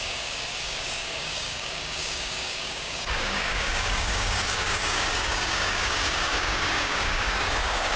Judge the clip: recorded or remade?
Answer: remade